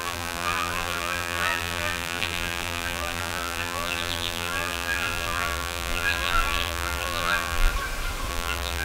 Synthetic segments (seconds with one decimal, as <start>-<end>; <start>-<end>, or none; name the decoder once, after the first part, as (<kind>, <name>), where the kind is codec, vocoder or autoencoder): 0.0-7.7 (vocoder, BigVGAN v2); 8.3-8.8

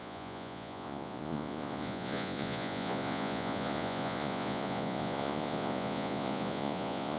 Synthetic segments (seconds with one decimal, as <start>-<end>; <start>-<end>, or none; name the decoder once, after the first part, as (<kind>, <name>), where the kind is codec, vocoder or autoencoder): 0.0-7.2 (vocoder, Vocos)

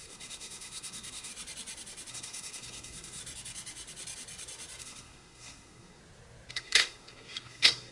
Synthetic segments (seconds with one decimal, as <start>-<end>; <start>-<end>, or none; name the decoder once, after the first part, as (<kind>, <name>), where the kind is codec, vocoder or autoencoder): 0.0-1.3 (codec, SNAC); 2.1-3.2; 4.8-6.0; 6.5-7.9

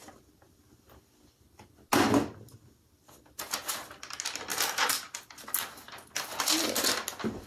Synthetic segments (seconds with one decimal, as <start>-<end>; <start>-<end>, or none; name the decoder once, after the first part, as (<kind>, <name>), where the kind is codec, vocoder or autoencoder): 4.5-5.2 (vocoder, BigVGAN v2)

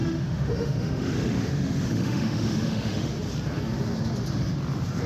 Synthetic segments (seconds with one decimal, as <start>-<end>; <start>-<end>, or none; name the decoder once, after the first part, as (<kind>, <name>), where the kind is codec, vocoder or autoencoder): 0.0-3.1 (autoencoder, DAC-VAE)